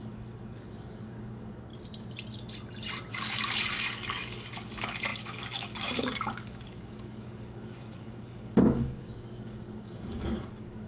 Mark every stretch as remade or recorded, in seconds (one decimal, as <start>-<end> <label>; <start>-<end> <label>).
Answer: 0.0-1.7 remade; 1.7-3.1 recorded; 3.1-10.9 remade